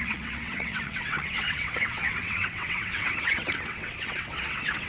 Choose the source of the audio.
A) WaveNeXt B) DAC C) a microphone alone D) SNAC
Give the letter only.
A